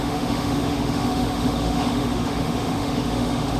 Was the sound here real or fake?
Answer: fake